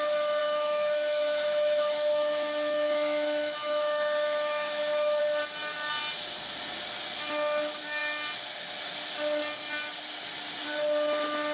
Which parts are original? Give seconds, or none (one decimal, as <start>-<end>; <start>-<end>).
0.0-0.4; 5.2-11.5